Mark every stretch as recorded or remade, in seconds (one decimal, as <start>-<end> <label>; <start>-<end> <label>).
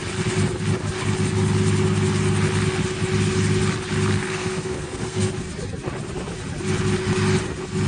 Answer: 0.0-4.2 recorded; 4.2-5.3 remade; 5.3-7.9 recorded